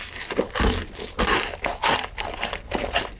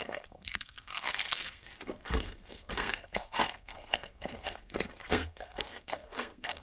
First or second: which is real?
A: first